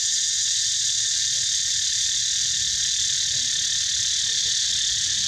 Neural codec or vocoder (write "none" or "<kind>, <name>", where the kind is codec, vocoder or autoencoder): none